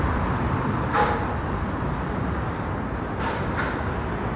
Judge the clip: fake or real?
real